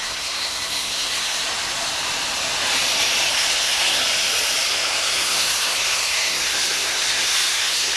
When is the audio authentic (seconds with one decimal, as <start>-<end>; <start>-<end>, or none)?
1.4-3.3; 4.0-4.7